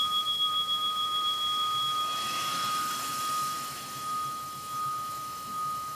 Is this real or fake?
fake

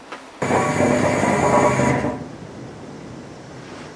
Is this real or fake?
real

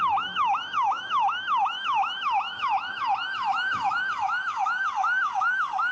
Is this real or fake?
fake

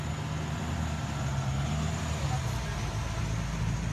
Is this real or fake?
real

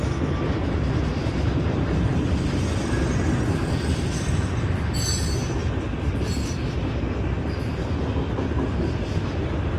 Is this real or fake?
real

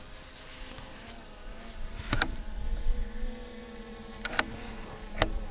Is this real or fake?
real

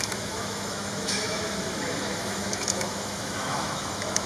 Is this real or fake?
fake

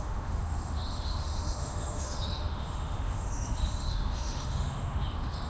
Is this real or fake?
fake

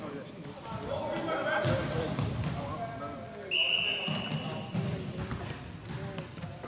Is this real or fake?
real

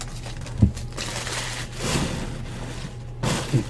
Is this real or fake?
real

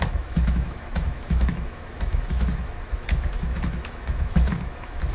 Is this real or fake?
fake